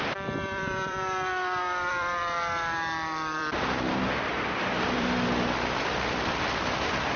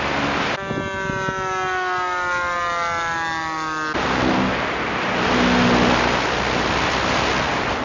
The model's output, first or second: first